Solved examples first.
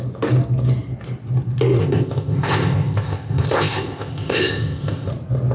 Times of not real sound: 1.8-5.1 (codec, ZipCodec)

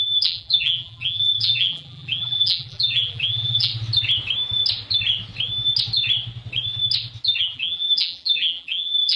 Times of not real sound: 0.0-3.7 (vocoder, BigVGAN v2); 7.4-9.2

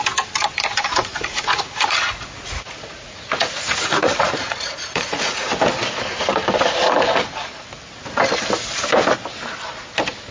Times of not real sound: 1.1-5.5 (vocoder, Vocos)

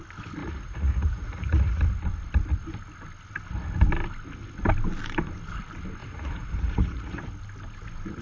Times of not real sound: 0.4-1.8 (vocoder, Vocos); 6.0-7.2

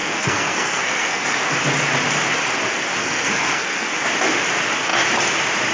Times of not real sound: 0.0-1.5 (codec, SNAC); 3.0-4.0

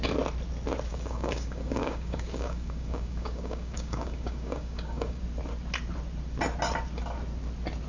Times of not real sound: 0.9-5.2 (codec, DAC)

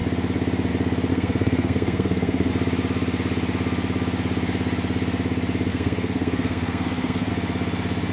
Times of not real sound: 1.1-2.5 (codec, SNAC); 5.7-7.3